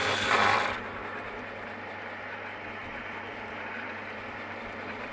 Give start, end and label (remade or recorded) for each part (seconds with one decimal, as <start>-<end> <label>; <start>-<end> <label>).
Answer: 0.0-0.8 remade; 0.8-2.8 recorded; 2.8-5.1 remade